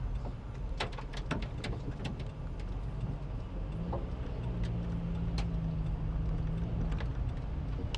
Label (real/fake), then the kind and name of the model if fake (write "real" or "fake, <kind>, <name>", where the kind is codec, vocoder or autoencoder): real